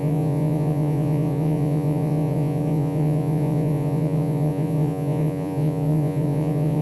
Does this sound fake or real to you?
fake